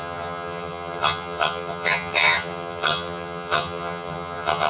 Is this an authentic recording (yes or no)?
no